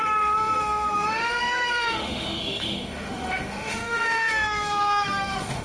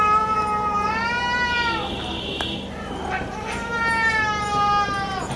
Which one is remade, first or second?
first